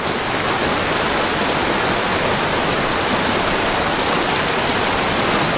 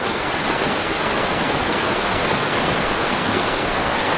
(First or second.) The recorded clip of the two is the first